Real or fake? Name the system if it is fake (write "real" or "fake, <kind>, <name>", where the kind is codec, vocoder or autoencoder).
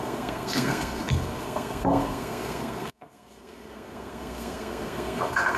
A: fake, codec, SNAC